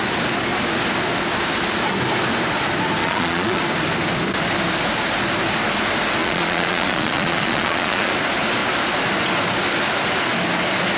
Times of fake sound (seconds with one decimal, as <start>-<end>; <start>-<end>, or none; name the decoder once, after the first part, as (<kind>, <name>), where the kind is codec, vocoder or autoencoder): 3.0-3.6 (vocoder, Vocos); 6.2-8.1